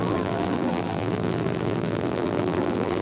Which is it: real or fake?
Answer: fake